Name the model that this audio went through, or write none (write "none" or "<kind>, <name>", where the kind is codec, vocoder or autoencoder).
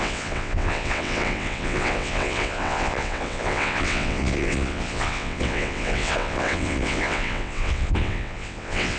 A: vocoder, WaveNeXt